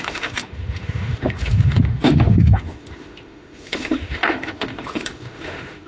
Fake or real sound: fake